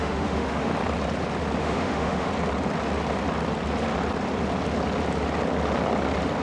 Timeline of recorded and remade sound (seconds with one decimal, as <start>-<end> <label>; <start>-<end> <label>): 0.0-0.7 remade; 0.7-1.6 recorded; 1.6-2.3 remade; 2.3-6.4 recorded